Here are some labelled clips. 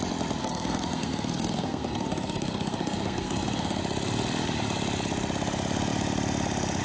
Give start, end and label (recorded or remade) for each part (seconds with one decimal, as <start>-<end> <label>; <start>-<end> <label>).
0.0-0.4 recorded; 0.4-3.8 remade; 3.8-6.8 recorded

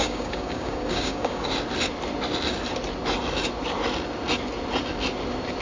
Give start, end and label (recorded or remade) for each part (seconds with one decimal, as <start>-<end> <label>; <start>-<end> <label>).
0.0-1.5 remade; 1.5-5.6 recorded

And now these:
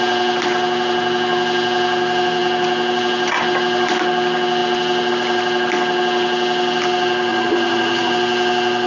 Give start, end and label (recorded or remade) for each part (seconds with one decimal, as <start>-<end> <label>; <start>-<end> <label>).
0.0-7.3 recorded; 7.3-8.1 remade; 8.1-8.9 recorded

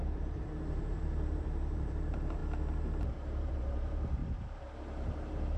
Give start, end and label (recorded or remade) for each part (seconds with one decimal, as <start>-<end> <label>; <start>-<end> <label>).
0.0-2.4 remade; 2.4-3.1 recorded; 3.1-4.2 remade; 4.2-5.6 recorded

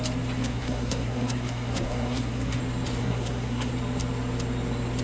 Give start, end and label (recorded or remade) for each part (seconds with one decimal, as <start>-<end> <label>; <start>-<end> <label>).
0.0-0.4 recorded; 0.4-2.6 remade; 2.6-3.0 recorded; 3.0-3.7 remade; 3.7-5.0 recorded

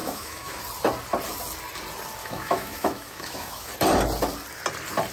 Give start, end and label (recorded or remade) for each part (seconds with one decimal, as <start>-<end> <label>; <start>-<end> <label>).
0.0-0.6 remade; 0.6-2.2 recorded; 2.2-3.7 remade; 3.7-5.1 recorded